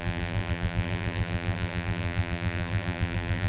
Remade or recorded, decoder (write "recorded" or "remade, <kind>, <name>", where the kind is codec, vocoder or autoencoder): remade, vocoder, BigVGAN v2